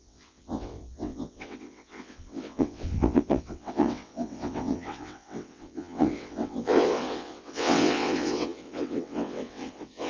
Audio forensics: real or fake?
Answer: fake